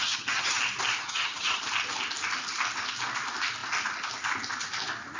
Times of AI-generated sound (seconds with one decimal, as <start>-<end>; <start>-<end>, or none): 0.0-0.6; 1.0-1.6